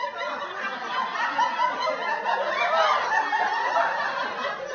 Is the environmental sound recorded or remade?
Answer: recorded